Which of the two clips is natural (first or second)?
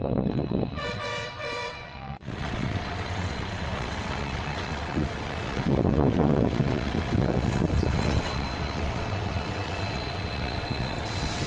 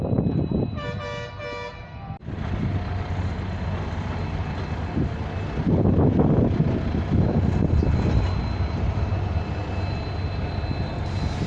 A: second